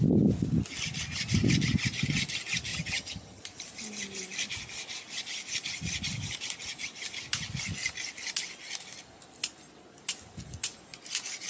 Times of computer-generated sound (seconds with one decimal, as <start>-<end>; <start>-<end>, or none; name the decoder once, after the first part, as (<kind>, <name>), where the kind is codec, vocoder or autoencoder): 2.7-3.4 (vocoder, HiFi-GAN)